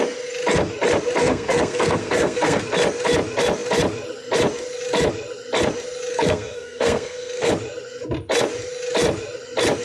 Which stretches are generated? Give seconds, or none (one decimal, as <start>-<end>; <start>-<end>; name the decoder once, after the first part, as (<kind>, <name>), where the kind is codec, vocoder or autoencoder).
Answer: 1.2-2.6 (codec, SNAC); 6.1-7.5